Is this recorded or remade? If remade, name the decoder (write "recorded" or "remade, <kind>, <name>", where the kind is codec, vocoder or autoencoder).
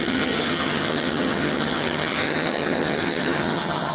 remade, vocoder, HiFi-GAN